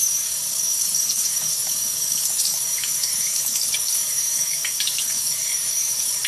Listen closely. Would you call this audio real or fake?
fake